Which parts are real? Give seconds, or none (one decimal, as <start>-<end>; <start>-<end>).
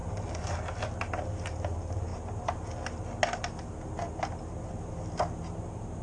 0.0-6.0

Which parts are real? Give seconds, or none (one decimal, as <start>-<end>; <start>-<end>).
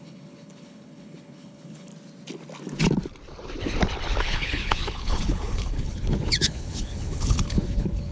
1.9-4.2